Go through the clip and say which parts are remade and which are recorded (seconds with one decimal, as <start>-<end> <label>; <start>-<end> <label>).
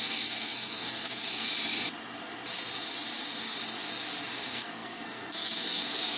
0.0-1.5 remade; 1.5-4.3 recorded; 4.3-6.2 remade